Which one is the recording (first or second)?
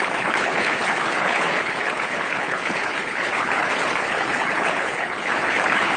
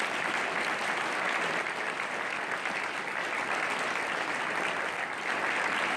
second